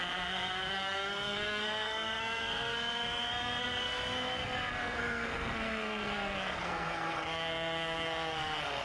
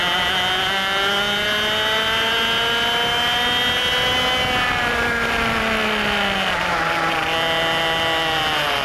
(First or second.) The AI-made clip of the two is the first